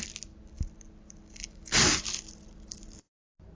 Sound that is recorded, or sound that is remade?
recorded